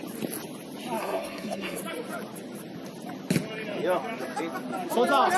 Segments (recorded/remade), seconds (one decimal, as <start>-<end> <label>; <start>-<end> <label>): 0.0-1.0 recorded; 1.0-1.8 remade; 1.8-5.4 recorded